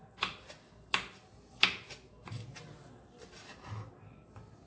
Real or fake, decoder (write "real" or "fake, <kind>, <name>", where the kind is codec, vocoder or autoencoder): real